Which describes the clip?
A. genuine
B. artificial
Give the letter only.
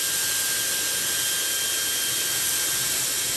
A